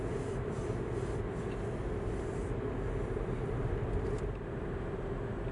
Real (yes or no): yes